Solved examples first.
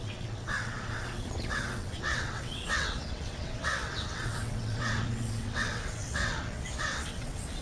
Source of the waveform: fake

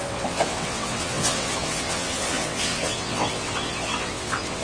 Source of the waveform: fake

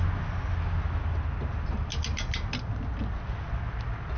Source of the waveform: real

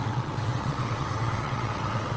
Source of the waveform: fake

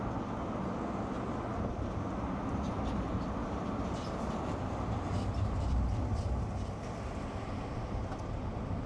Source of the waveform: real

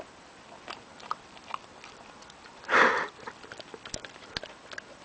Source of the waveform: real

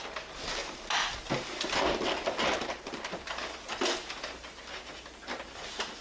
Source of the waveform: real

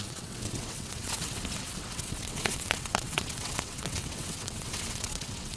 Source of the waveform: fake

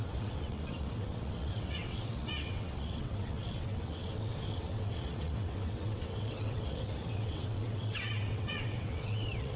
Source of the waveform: fake